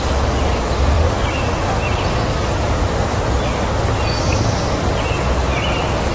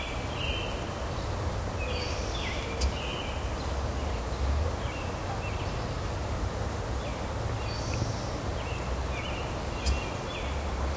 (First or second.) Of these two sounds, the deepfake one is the first